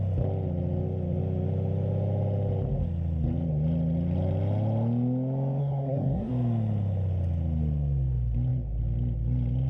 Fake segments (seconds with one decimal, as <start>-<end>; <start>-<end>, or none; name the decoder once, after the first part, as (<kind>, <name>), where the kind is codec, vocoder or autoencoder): 5.6-6.3 (codec, SNAC)